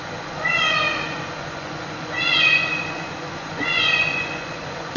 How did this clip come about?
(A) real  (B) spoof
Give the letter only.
B